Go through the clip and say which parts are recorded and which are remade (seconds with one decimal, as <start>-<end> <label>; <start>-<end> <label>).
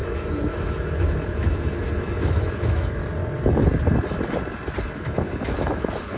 0.0-3.0 remade; 3.0-4.9 recorded; 4.9-6.2 remade